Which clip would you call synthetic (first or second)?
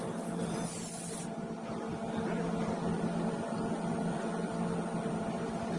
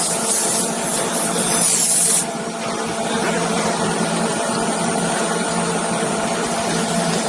second